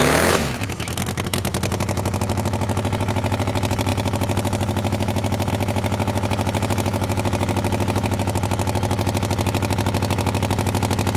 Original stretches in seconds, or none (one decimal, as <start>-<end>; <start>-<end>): none